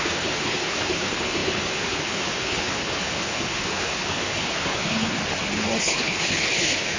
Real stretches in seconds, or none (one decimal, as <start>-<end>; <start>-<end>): 5.2-5.8